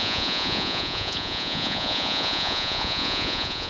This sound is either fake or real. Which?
fake